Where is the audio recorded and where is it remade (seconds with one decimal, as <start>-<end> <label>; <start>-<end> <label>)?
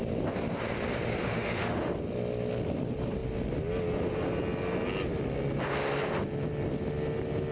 0.0-1.2 recorded; 1.2-1.9 remade; 1.9-7.5 recorded